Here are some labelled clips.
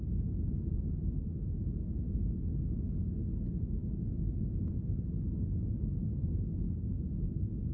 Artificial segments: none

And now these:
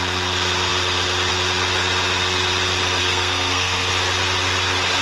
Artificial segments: 3.0-3.9 (codec, SNAC)

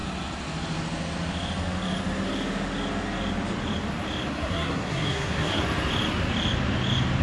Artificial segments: 4.3-5.6 (codec, SNAC)